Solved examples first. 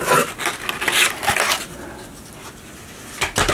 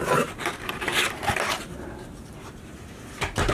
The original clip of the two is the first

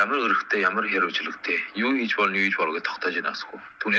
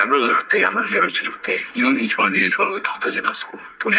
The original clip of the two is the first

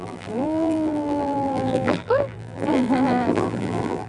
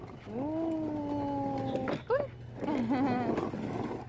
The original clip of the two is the second